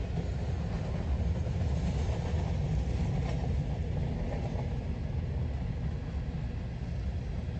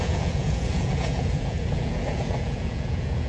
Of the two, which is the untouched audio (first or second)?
first